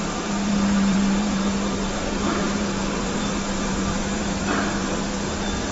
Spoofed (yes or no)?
yes